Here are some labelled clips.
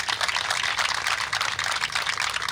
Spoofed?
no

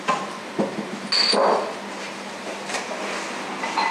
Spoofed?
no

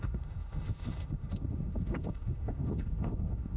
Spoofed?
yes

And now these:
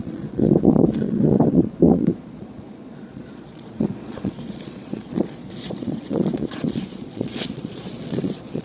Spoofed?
yes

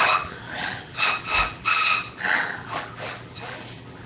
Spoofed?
yes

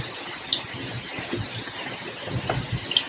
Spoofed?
no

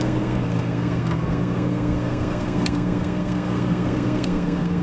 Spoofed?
yes